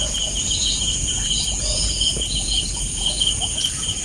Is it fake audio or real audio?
fake